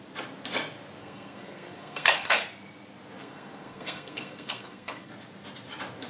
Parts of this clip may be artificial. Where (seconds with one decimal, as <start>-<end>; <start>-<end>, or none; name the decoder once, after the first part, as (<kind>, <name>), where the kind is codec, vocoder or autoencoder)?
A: 1.0-2.4 (codec, SNAC); 3.2-5.1

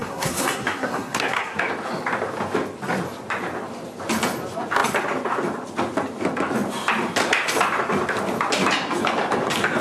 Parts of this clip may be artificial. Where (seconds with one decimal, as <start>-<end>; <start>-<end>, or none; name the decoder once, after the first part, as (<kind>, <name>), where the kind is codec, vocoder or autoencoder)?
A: 0.0-1.6 (codec, SNAC)

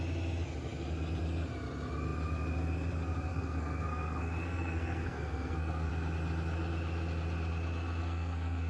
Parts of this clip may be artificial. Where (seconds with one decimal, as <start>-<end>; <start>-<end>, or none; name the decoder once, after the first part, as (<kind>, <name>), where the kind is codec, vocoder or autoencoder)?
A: 3.3-5.9 (codec, SNAC); 8.0-8.7

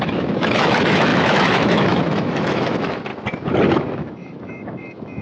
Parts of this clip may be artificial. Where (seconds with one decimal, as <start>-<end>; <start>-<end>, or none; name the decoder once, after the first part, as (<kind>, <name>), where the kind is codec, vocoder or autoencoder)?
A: 0.0-3.1 (autoencoder, DAC-VAE); 3.7-5.2

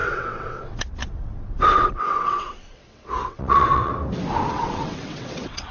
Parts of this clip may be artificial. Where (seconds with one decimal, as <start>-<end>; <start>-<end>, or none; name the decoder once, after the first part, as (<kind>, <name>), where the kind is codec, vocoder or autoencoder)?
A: 0.0-3.9 (vocoder, WaveNeXt); 4.5-5.7

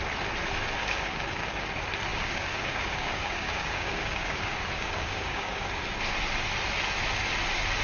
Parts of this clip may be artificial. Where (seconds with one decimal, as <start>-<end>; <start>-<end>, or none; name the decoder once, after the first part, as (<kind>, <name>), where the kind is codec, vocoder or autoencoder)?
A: 0.8-1.7 (codec, DAC); 2.1-5.7